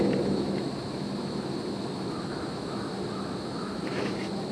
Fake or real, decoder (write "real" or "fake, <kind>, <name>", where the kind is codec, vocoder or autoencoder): fake, autoencoder, DAC-VAE